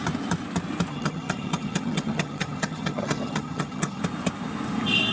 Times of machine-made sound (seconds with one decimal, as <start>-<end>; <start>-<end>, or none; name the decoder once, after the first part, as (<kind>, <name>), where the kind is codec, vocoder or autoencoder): 0.9-4.0 (vocoder, HiFi-GAN)